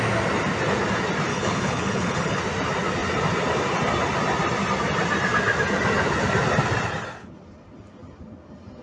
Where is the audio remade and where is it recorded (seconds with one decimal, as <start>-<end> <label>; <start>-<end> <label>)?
0.0-1.3 recorded; 1.3-2.4 remade; 2.4-8.8 recorded